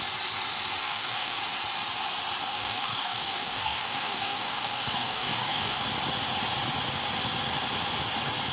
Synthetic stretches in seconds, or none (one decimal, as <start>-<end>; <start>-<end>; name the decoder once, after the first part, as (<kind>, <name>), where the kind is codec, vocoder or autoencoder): 0.8-1.4 (codec, DAC); 2.4-5.8